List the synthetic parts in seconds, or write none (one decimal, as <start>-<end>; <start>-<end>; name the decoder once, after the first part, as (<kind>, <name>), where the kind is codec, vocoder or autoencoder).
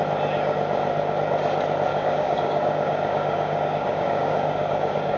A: 1.9-5.2 (codec, DAC)